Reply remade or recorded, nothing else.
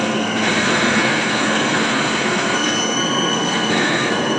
remade